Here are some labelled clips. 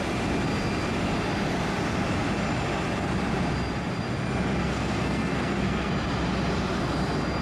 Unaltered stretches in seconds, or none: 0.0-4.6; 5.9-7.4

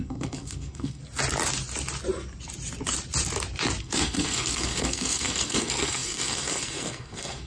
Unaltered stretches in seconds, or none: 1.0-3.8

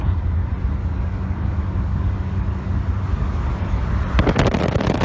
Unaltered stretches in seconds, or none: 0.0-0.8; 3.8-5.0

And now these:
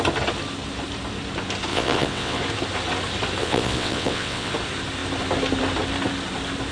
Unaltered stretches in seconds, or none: 0.0-1.7; 2.4-3.4; 4.5-6.7